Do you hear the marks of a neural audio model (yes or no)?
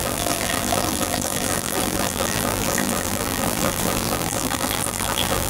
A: yes